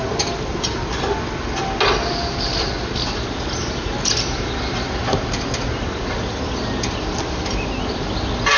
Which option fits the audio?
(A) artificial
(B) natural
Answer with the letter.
B